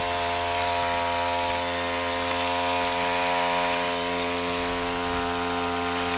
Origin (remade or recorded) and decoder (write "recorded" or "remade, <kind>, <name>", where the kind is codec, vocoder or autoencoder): recorded